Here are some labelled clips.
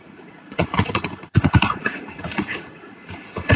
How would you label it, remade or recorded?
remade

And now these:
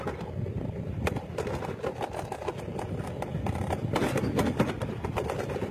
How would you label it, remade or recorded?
recorded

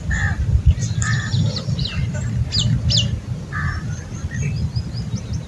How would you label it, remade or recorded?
recorded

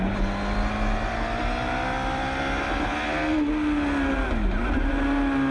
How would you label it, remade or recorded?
recorded